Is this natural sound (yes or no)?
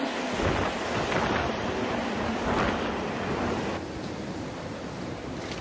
yes